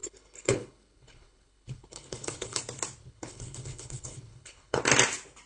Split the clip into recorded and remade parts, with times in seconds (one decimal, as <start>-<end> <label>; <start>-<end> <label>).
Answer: 0.0-2.6 remade; 2.6-3.0 recorded; 3.0-4.8 remade; 4.8-5.5 recorded